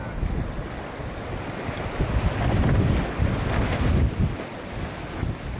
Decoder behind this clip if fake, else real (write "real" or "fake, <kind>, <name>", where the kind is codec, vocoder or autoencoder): real